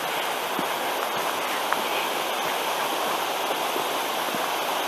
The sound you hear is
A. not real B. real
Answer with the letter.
B